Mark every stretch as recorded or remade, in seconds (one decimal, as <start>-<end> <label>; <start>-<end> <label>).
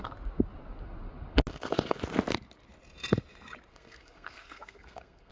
0.0-1.5 recorded; 1.5-2.0 remade; 2.0-3.7 recorded; 3.7-5.3 remade